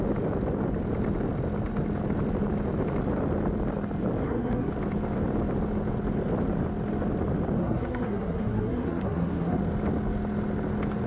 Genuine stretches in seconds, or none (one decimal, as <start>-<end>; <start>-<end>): 0.0-4.2; 4.7-7.6; 9.6-11.1